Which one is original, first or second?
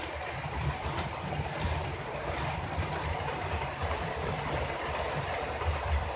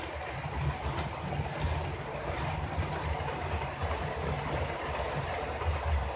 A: second